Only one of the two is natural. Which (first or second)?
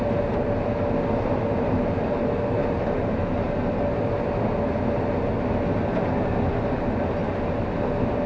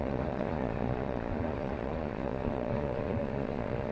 first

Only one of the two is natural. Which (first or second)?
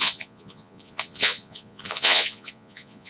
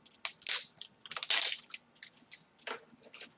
second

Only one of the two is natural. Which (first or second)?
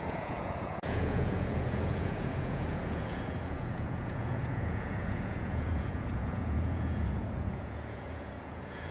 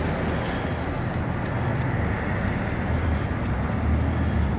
second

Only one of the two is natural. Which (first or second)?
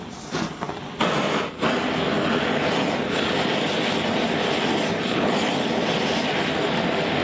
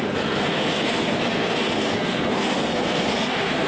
first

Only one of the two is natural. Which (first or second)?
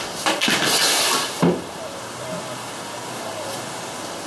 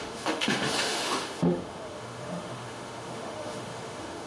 first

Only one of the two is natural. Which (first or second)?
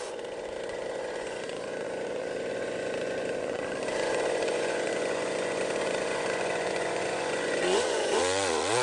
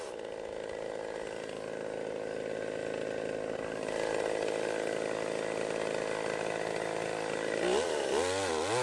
second